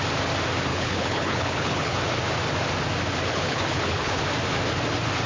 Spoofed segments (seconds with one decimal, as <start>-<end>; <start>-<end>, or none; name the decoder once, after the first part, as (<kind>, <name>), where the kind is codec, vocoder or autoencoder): 0.7-2.0 (codec, HILCodec); 3.3-4.2